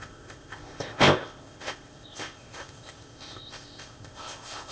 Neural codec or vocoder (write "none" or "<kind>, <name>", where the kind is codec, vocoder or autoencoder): codec, ZipCodec